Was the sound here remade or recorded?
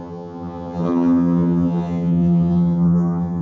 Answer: remade